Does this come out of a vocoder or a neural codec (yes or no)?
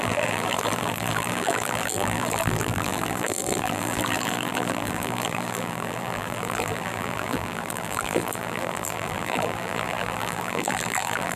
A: yes